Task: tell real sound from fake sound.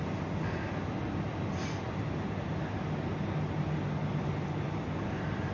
real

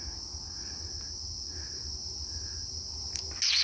real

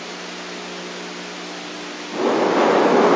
real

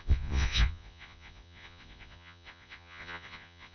fake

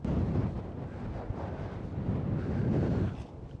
real